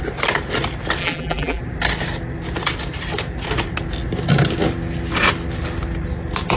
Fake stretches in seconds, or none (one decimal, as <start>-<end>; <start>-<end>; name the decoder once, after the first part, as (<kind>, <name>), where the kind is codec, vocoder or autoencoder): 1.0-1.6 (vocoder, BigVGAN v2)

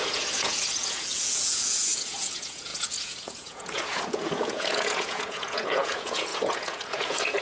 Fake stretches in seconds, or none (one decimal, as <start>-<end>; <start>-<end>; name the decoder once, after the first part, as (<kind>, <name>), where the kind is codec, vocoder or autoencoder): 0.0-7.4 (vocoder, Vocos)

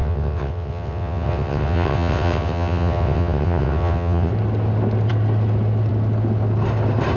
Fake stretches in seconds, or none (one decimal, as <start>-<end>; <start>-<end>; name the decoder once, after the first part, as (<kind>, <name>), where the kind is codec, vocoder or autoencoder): 0.0-4.3 (vocoder, WaveNeXt)

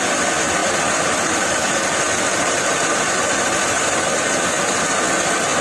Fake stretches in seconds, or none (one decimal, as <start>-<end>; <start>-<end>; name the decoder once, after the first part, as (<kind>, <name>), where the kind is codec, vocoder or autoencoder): 0.6-4.0 (vocoder, BigVGAN v2)